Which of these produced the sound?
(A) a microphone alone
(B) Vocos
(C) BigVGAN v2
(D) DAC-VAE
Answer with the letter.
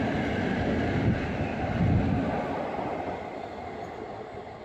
A